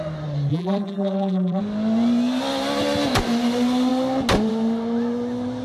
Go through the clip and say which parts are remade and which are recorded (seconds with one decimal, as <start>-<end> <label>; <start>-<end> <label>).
0.0-0.5 recorded; 0.5-1.6 remade; 1.6-5.6 recorded